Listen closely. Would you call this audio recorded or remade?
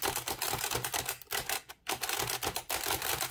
recorded